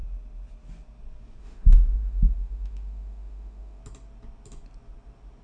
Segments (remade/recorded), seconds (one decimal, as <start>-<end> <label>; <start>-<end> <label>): 0.0-1.4 recorded; 1.4-3.8 remade; 3.8-5.4 recorded